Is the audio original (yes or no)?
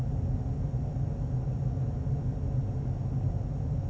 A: yes